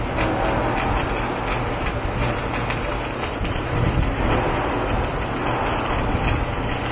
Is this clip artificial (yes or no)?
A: no